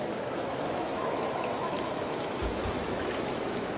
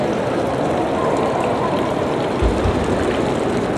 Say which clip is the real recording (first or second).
second